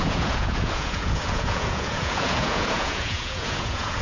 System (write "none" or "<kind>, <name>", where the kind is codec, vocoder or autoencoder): vocoder, Vocos